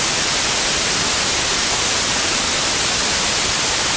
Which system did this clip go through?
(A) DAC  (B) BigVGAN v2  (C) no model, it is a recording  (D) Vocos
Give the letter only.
C